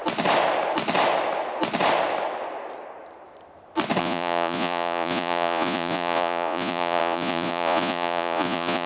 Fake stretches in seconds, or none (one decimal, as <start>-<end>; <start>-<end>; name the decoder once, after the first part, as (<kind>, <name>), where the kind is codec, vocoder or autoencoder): 4.0-8.9 (vocoder, Vocos)